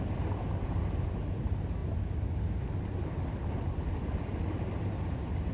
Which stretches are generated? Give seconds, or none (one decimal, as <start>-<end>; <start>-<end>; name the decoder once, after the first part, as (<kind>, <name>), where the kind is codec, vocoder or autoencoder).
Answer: none